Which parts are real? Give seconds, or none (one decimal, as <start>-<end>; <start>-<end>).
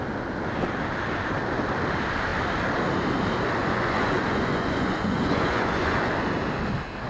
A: 0.0-3.6; 6.1-7.1